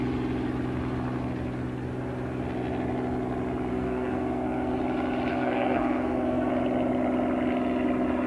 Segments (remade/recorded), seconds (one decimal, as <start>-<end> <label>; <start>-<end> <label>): 0.0-3.7 recorded; 3.7-4.8 remade; 4.8-5.3 recorded; 5.3-6.5 remade; 6.5-8.3 recorded